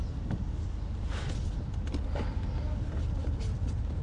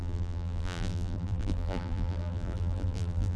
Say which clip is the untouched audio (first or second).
first